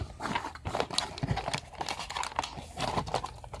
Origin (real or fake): real